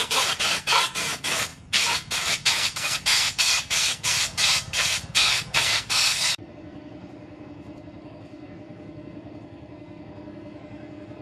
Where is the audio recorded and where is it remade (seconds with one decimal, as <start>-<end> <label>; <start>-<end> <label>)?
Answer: 0.0-11.2 remade